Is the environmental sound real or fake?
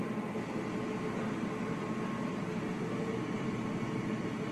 real